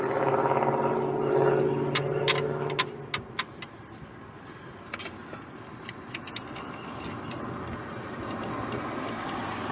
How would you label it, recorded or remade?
recorded